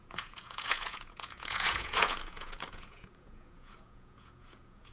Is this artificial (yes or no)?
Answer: yes